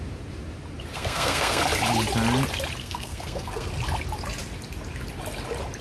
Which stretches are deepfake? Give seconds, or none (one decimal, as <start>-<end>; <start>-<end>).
0.9-1.6; 2.8-3.7